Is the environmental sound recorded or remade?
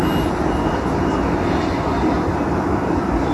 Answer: recorded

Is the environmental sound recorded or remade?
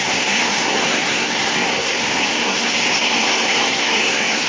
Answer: remade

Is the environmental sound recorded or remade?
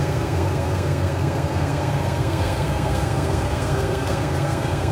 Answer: remade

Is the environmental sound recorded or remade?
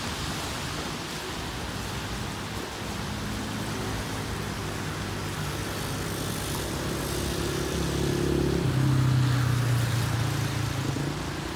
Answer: recorded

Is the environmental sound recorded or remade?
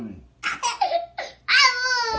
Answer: recorded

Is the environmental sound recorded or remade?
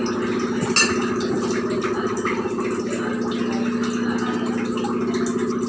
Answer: recorded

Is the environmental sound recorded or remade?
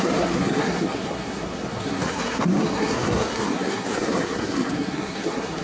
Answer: remade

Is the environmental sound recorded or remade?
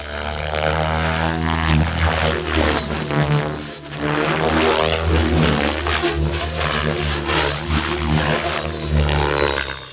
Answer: recorded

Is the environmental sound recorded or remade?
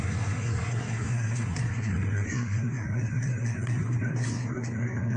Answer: remade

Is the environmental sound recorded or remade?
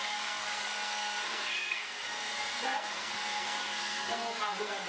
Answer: remade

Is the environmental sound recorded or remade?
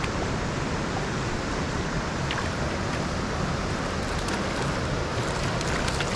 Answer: recorded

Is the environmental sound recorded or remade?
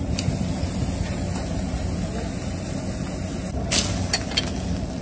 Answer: recorded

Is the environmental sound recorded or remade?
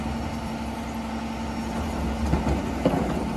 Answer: recorded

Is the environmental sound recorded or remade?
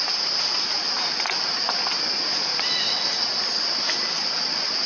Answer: recorded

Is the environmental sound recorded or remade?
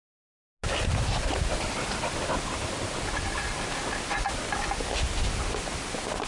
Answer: recorded